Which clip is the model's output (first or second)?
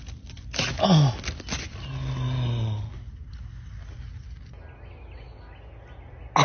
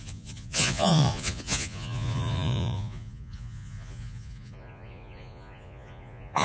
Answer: second